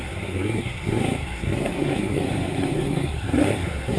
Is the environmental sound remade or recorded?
remade